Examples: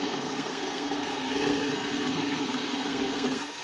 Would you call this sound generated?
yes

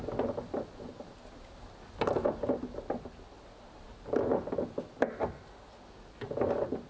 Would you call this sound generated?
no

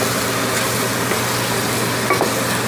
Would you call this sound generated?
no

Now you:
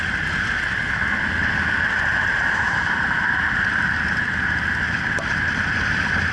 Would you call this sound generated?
no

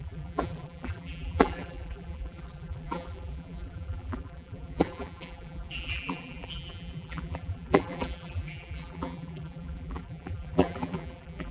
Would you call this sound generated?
yes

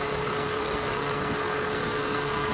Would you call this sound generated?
yes